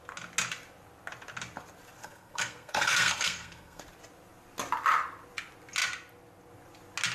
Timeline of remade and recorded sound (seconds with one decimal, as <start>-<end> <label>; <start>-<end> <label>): 0.0-2.0 recorded; 2.0-3.8 remade; 3.8-7.1 recorded